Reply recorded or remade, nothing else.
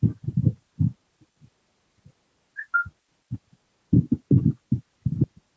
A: recorded